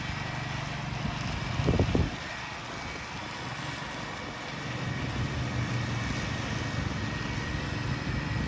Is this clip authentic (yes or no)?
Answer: yes